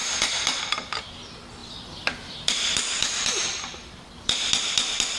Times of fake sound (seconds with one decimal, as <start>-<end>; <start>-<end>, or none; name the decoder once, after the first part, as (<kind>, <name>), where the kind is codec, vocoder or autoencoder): 0.0-0.6 (vocoder, BigVGAN v2); 1.6-4.5